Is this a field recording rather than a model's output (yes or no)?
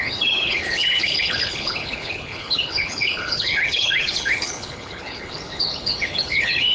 no